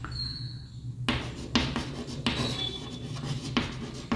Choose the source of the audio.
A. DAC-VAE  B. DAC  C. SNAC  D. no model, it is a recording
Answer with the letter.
D